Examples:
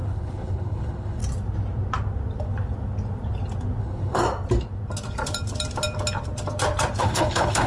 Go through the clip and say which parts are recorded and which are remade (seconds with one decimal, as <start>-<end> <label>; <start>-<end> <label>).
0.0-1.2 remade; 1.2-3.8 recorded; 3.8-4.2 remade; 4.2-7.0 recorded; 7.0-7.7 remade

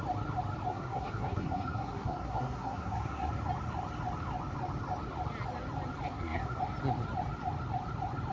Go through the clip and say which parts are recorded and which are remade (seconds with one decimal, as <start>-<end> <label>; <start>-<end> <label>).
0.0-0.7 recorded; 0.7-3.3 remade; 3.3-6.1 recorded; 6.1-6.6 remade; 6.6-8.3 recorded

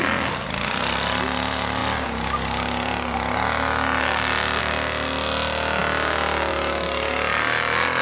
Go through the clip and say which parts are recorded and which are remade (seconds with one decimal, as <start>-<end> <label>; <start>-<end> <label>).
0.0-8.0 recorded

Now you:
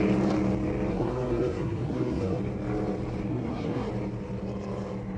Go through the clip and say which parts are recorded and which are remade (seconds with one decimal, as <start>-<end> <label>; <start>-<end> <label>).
0.0-0.9 recorded; 0.9-2.4 remade; 2.4-3.3 recorded; 3.3-3.9 remade; 3.9-5.2 recorded

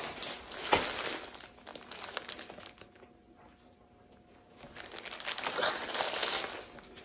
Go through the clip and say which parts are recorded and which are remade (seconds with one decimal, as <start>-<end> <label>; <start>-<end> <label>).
0.0-7.0 recorded